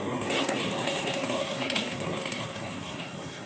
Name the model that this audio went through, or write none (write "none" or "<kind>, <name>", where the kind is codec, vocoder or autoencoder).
codec, SNAC